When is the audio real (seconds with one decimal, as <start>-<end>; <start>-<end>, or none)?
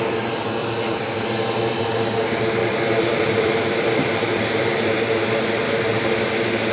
0.0-0.6; 1.8-2.6; 4.3-6.7